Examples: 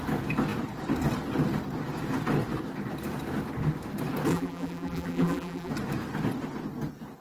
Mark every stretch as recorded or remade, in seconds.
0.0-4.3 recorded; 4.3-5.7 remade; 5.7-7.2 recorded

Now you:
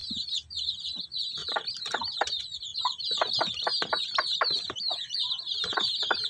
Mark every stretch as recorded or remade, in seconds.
0.0-6.3 recorded

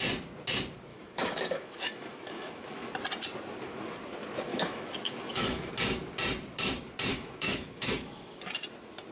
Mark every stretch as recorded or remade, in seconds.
0.0-0.9 recorded; 0.9-2.9 remade; 2.9-4.5 recorded; 4.5-5.7 remade; 5.7-7.1 recorded; 7.1-8.4 remade; 8.4-9.1 recorded

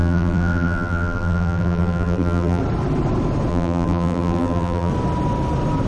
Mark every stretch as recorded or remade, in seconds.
0.0-2.6 remade; 2.6-3.5 recorded; 3.5-4.9 remade; 4.9-5.9 recorded

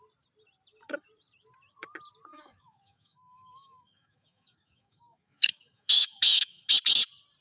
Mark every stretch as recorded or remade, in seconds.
0.0-2.3 recorded; 2.3-6.7 remade; 6.7-7.4 recorded

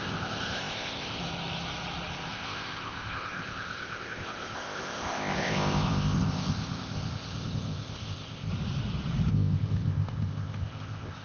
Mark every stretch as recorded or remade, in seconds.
0.0-1.2 remade; 1.2-2.3 recorded; 2.3-8.5 remade; 8.5-9.3 recorded; 9.3-11.2 remade

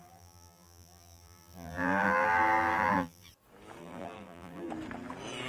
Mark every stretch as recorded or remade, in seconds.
0.0-3.3 remade; 3.3-3.8 recorded; 3.8-4.7 remade; 4.7-5.5 recorded

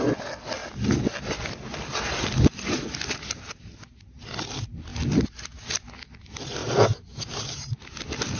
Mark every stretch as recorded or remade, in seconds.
0.0-6.6 recorded; 6.6-7.8 remade; 7.8-8.4 recorded